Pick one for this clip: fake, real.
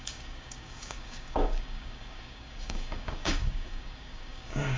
fake